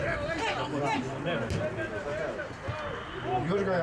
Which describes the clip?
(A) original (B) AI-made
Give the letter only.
A